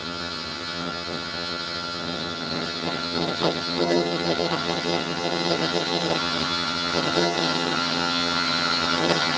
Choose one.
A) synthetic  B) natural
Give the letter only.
A